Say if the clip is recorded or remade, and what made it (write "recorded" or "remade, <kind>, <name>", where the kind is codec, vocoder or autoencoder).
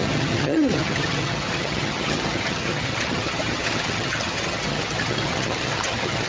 remade, vocoder, HiFi-GAN